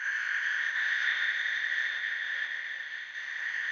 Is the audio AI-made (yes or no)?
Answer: yes